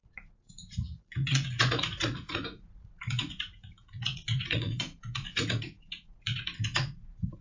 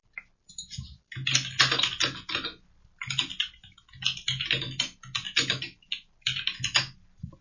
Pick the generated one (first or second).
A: first